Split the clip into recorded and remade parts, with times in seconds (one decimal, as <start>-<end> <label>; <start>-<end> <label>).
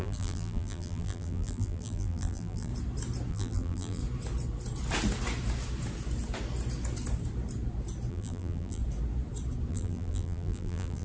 0.0-2.7 remade; 2.7-3.3 recorded; 3.3-4.0 remade; 4.0-8.1 recorded; 8.1-8.8 remade; 8.8-9.7 recorded; 9.7-11.0 remade